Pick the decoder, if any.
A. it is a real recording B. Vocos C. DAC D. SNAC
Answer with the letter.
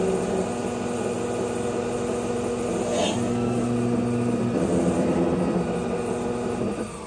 A